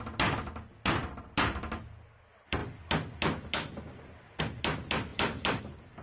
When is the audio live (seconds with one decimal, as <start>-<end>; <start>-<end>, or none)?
0.0-5.1; 5.6-6.0